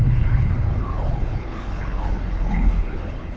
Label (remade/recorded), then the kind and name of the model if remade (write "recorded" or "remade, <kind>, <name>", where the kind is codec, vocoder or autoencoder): remade, codec, HILCodec